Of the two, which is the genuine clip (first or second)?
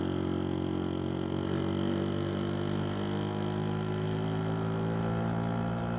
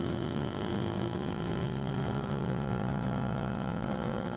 first